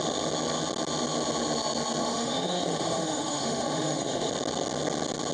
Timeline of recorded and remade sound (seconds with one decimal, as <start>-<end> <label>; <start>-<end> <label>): 0.0-2.0 recorded; 2.0-4.3 remade; 4.3-5.3 recorded